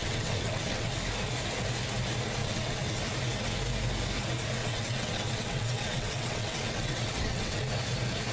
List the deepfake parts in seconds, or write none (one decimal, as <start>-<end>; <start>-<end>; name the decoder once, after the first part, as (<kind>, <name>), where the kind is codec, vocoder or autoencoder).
0.0-0.9 (vocoder, WaveNeXt); 2.4-3.0; 4.6-7.7